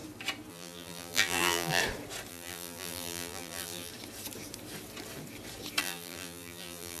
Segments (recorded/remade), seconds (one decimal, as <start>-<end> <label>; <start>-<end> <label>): 0.0-0.5 recorded; 0.5-1.8 remade; 1.8-2.3 recorded; 2.3-3.9 remade; 3.9-5.8 recorded; 5.8-7.0 remade